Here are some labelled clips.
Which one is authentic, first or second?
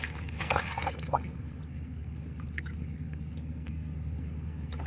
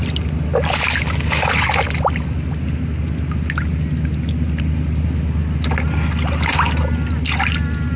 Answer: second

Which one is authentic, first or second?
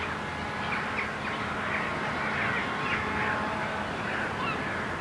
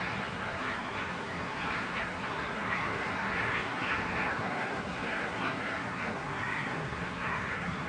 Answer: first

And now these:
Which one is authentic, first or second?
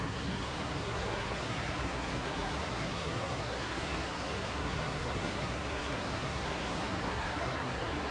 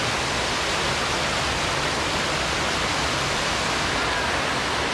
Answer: second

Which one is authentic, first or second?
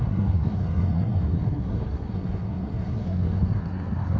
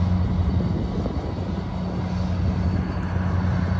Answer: second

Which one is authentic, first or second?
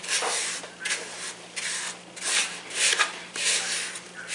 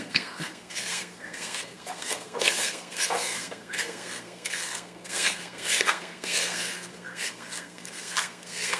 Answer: first